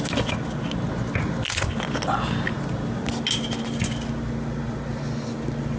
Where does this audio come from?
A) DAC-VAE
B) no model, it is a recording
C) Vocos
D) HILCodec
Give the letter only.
B